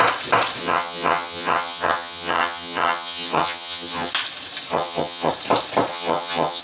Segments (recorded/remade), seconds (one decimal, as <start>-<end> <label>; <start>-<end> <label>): 0.0-0.6 recorded; 0.6-4.1 remade; 4.1-4.7 recorded; 4.7-5.3 remade; 5.3-5.9 recorded; 5.9-6.6 remade